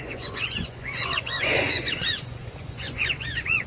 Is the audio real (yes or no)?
no